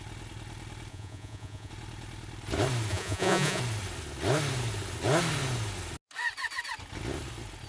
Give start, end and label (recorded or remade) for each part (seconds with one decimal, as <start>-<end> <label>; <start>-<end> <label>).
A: 0.0-0.9 recorded; 0.9-1.7 remade; 1.7-2.9 recorded; 2.9-3.6 remade; 3.6-7.7 recorded